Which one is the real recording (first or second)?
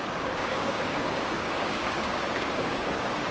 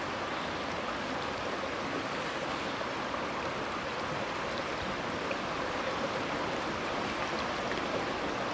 second